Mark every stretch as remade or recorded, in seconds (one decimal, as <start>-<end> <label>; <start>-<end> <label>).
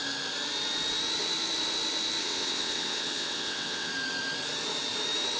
0.0-2.2 recorded; 2.2-3.9 remade; 3.9-5.4 recorded